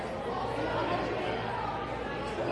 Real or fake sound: real